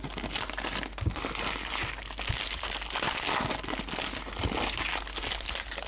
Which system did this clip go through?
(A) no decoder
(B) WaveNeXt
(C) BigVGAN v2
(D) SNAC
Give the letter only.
A